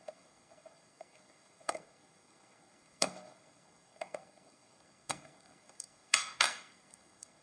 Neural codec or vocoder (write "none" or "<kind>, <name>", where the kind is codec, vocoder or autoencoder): codec, SNAC